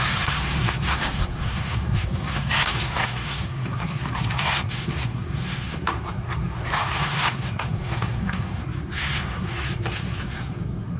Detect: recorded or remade remade